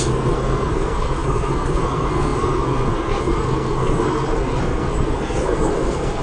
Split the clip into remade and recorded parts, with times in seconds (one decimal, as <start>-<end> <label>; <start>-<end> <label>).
0.0-6.2 remade